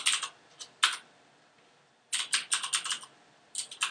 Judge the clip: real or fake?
real